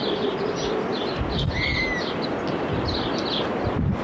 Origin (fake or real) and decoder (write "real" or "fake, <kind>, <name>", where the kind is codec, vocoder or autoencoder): real